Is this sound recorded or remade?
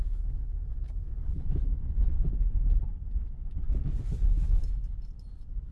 recorded